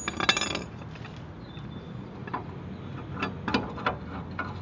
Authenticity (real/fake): real